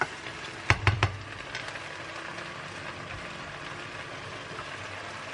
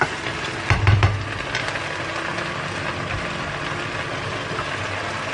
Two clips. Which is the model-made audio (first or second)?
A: first